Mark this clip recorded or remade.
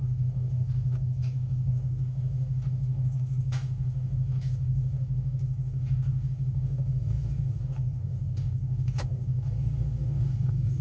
remade